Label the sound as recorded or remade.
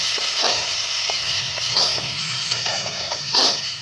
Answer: remade